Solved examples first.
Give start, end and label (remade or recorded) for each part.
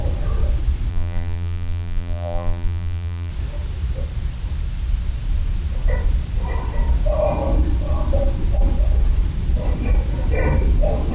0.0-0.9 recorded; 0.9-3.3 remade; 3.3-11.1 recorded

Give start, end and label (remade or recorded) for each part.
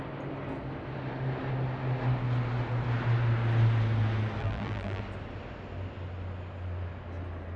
0.0-4.4 recorded; 4.4-5.0 remade; 5.0-7.6 recorded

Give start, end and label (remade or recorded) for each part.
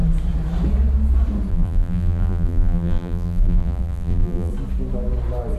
0.0-1.5 recorded; 1.5-4.5 remade; 4.5-5.6 recorded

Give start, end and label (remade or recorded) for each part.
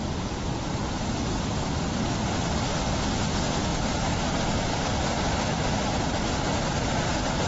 0.0-7.5 recorded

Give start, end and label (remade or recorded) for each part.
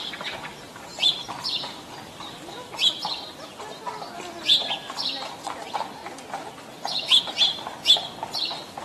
0.0-0.9 remade; 0.9-1.9 recorded; 1.9-6.0 remade; 6.0-6.5 recorded; 6.5-7.3 remade; 7.3-7.9 recorded; 7.9-8.8 remade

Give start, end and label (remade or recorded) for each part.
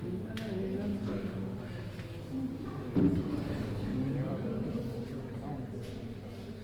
0.0-3.9 recorded; 3.9-5.0 remade; 5.0-6.6 recorded